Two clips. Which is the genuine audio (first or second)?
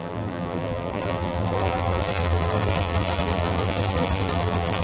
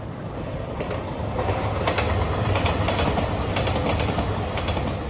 second